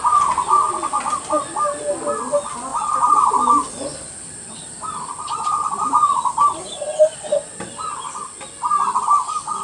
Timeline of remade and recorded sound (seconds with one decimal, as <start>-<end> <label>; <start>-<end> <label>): 0.0-2.7 recorded; 2.7-3.3 remade; 3.3-3.9 recorded; 3.9-8.3 remade; 8.3-9.6 recorded